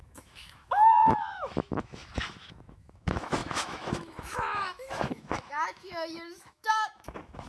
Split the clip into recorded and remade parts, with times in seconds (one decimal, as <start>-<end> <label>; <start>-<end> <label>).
0.0-7.5 remade